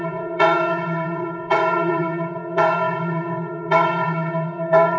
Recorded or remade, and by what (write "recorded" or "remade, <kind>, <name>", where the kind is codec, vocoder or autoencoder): remade, vocoder, WaveNeXt